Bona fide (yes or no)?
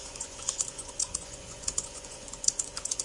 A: no